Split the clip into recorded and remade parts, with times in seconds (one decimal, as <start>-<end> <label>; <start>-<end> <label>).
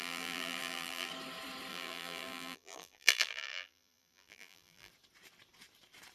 0.0-1.1 remade; 1.1-1.7 recorded; 1.7-4.9 remade; 4.9-6.1 recorded